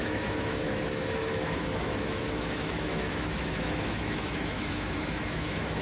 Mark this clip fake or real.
fake